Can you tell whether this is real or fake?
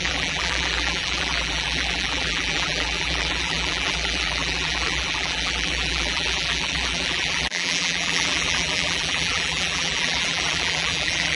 fake